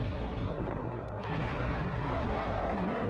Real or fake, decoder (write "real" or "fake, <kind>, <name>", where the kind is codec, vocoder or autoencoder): fake, codec, SNAC